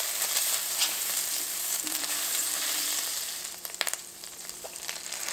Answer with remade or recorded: remade